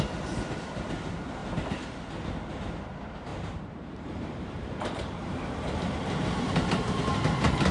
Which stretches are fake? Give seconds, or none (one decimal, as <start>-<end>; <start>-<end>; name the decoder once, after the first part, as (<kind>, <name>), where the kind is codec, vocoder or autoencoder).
3.3-7.2 (vocoder, BigVGAN v2)